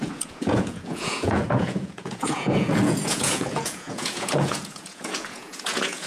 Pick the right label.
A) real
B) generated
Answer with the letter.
B